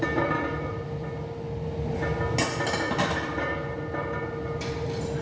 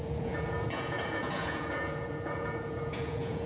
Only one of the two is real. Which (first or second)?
first